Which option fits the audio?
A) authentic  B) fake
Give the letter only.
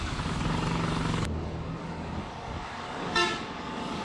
B